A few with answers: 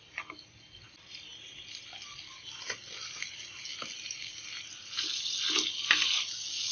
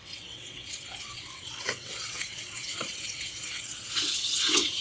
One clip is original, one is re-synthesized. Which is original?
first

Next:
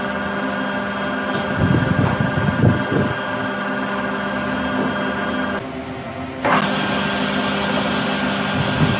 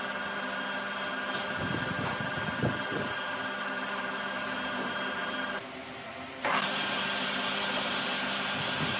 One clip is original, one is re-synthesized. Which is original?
first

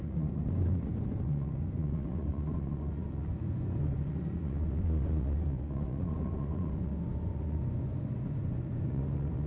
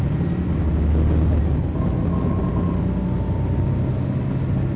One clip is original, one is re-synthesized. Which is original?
second